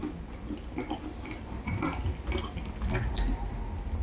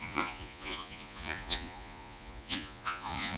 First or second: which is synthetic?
second